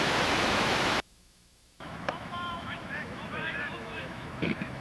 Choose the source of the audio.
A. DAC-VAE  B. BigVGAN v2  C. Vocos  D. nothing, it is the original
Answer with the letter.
A